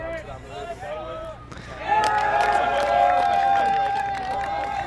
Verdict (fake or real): fake